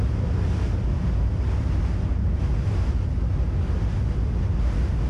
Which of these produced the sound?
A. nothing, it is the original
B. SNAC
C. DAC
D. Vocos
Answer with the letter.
A